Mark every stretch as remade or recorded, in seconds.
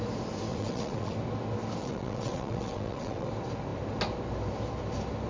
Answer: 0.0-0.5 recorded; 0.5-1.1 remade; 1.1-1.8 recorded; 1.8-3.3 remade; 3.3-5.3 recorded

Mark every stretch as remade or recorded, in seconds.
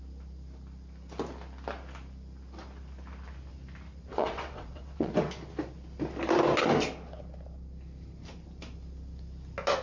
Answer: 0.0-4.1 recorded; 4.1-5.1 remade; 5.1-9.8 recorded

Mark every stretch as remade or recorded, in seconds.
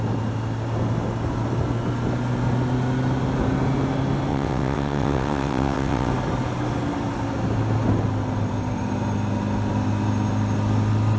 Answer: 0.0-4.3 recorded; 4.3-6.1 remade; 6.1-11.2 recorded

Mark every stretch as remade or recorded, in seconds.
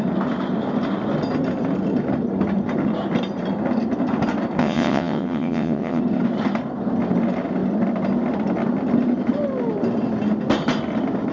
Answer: 0.0-4.6 recorded; 4.6-6.0 remade; 6.0-11.3 recorded